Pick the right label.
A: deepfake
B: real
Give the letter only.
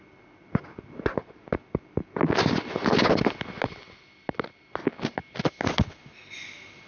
B